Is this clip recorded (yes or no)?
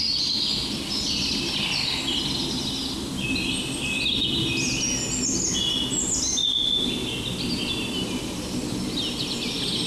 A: yes